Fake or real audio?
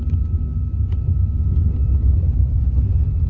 real